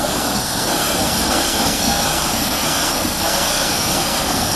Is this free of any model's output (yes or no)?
no